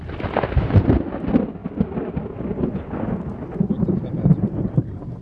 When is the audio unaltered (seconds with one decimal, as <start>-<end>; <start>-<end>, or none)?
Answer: 0.0-5.2